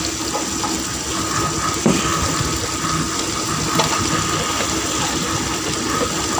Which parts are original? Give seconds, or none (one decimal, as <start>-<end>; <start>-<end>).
0.0-6.4